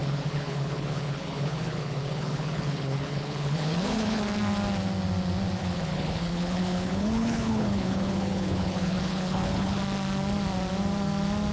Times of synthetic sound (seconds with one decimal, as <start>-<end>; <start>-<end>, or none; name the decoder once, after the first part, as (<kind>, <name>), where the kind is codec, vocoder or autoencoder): 0.0-4.2 (codec, HILCodec); 5.6-9.8